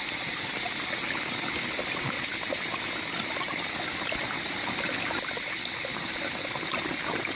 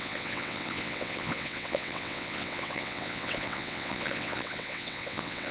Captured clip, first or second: first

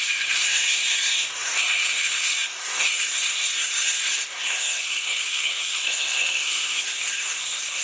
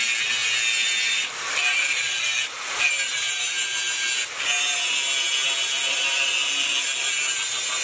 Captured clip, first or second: second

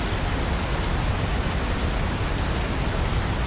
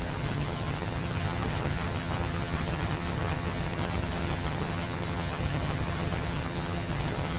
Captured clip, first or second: first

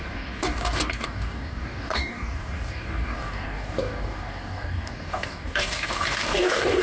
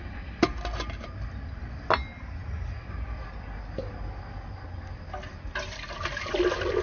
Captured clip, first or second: second